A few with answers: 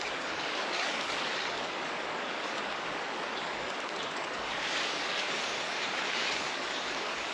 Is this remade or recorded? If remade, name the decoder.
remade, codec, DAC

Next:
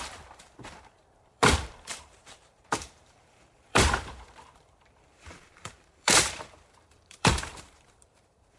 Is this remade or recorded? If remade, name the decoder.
remade, vocoder, BigVGAN v2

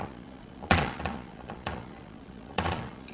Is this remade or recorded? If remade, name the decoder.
remade, vocoder, Vocos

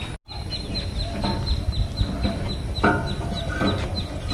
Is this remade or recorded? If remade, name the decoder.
recorded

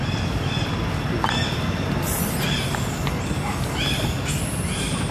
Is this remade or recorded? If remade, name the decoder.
recorded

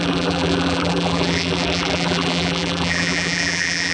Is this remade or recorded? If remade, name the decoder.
remade, vocoder, BigVGAN v2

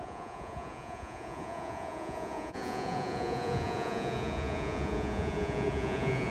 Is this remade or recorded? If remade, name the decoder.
remade, vocoder, Vocos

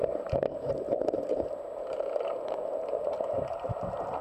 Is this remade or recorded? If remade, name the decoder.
recorded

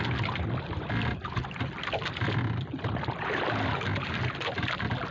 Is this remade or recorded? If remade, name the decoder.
recorded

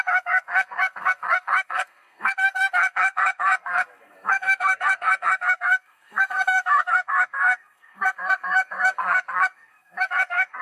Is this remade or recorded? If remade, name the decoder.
remade, codec, SNAC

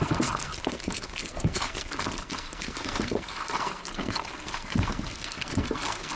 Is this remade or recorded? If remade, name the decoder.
remade, codec, SNAC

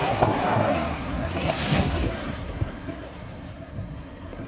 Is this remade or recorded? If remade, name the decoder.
remade, codec, SNAC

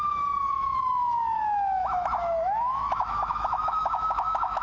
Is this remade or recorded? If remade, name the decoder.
remade, autoencoder, DAC-VAE